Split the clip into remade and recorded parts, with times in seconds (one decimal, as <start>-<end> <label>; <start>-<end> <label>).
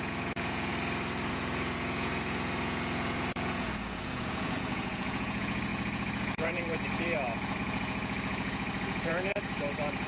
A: 0.0-0.7 remade; 0.7-1.3 recorded; 1.3-10.1 remade